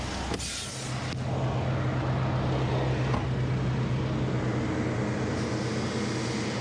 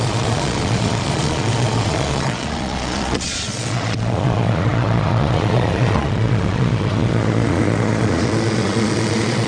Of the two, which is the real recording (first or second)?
first